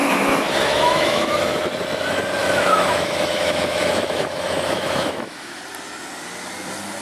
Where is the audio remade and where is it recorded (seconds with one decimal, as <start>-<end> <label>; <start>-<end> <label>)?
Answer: 0.0-1.6 remade; 1.6-2.4 recorded; 2.4-5.6 remade; 5.6-7.0 recorded